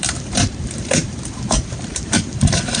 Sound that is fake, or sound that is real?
fake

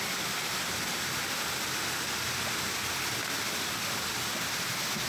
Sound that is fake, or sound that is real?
real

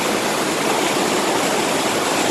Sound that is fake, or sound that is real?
fake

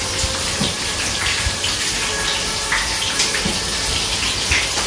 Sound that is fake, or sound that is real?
real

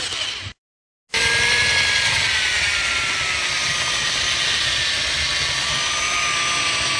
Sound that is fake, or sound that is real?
real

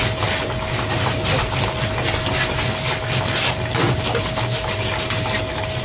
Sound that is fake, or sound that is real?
real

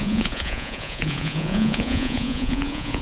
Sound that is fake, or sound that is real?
fake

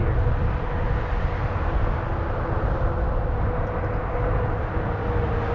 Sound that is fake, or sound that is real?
real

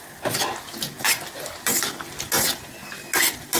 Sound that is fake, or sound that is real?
real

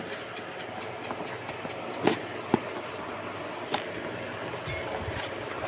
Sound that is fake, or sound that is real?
real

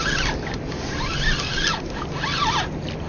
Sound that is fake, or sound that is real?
real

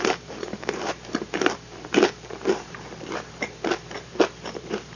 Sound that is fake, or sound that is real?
fake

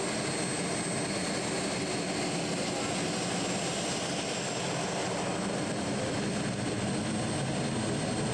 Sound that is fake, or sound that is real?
real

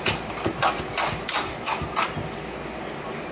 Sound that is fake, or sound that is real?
real